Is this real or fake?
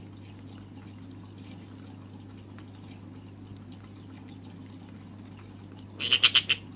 real